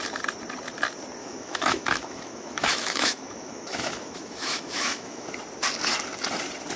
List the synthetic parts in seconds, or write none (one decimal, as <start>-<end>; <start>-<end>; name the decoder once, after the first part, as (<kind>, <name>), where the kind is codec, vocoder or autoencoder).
1.2-5.3 (autoencoder, DAC-VAE)